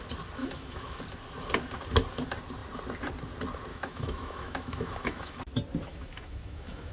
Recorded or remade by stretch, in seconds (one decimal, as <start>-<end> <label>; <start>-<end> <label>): 0.0-0.4 recorded; 0.4-1.0 remade; 1.0-3.7 recorded; 3.7-5.4 remade; 5.4-5.9 recorded; 5.9-6.9 remade